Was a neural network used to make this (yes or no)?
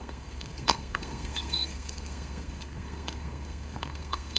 yes